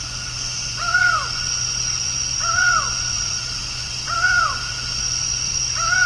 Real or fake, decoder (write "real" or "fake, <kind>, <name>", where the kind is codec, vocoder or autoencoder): fake, vocoder, Vocos